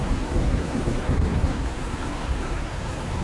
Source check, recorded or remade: remade